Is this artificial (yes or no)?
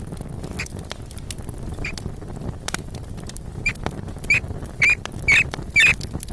no